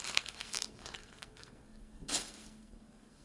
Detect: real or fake fake